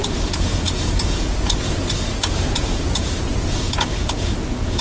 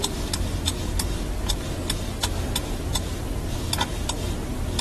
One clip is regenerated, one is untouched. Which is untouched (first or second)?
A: second